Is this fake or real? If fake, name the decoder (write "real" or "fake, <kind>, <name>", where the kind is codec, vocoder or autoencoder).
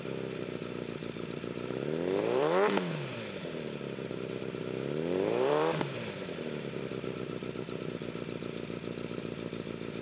fake, vocoder, BigVGAN v2